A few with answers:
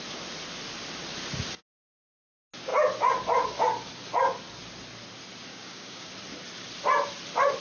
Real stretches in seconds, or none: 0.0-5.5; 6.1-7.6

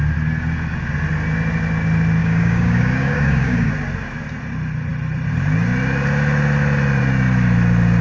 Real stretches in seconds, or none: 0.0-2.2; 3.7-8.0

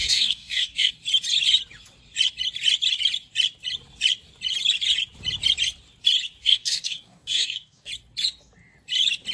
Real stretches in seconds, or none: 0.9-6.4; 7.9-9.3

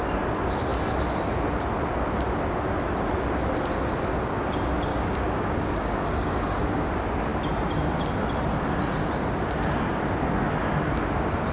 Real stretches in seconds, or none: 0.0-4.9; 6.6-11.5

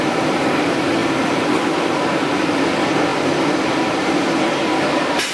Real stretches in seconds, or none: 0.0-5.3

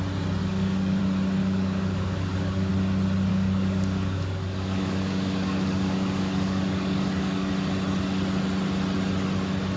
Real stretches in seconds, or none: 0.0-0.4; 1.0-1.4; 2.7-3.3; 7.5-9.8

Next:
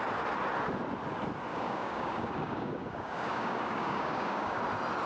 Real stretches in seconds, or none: 0.0-1.5; 4.6-5.1

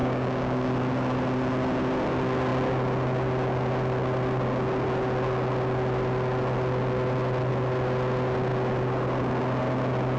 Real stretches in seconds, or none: 0.7-10.2